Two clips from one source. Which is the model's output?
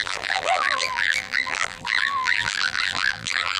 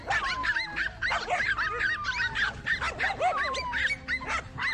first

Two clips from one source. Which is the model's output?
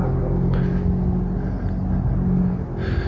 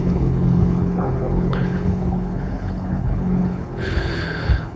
second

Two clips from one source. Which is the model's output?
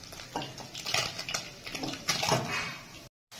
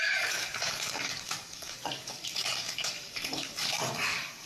second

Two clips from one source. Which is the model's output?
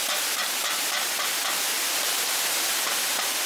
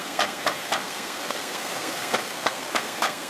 second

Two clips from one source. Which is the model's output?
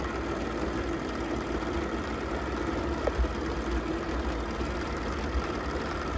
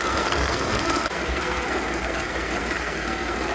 second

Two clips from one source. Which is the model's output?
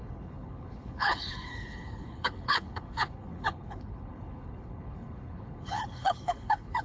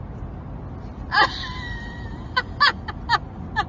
first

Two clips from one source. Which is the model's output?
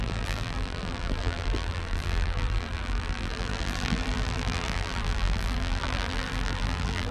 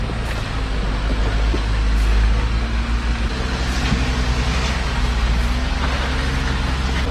first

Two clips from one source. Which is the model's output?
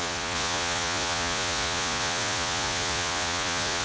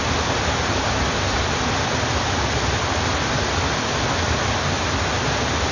first